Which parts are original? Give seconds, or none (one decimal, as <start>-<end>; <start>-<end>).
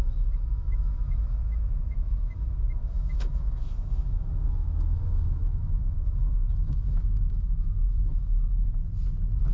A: 8.8-9.5